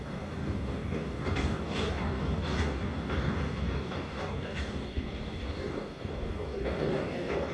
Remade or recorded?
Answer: remade